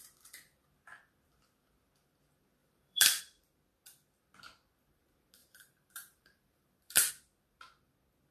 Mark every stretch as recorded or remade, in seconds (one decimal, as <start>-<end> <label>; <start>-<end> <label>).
0.0-2.6 recorded; 2.6-3.2 remade; 3.2-5.4 recorded; 5.4-7.1 remade; 7.1-8.3 recorded